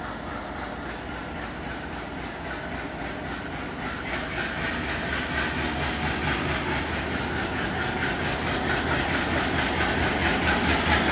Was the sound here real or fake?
real